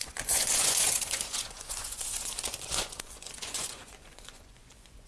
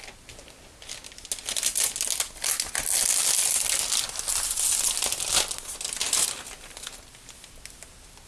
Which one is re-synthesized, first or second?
first